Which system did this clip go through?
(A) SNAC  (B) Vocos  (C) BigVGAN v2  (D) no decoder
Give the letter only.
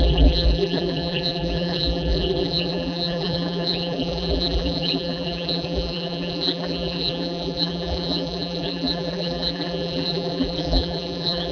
C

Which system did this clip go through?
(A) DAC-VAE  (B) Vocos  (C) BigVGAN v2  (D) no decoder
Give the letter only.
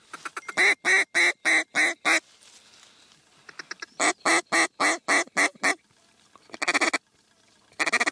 D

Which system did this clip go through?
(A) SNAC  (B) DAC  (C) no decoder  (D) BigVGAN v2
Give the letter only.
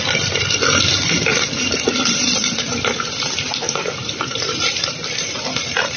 D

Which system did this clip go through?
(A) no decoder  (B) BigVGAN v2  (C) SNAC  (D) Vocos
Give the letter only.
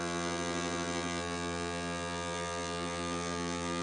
B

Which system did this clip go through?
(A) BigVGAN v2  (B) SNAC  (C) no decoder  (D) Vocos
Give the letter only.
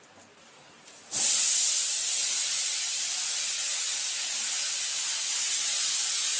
C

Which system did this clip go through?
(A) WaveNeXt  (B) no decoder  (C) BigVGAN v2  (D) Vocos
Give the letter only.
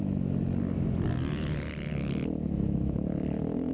B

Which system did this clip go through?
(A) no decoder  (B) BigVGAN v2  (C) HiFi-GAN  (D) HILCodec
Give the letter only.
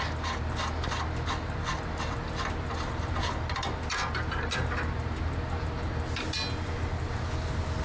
A